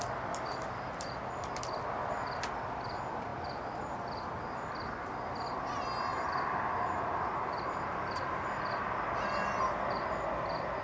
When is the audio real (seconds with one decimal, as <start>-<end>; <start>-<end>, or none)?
0.0-6.1; 8.4-10.8